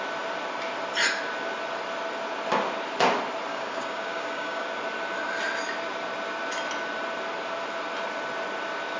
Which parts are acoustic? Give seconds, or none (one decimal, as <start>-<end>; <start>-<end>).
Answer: 0.0-3.5; 4.7-9.0